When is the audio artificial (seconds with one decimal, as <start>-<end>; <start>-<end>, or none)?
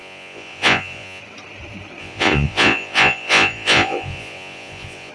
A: 0.0-1.2; 2.0-5.1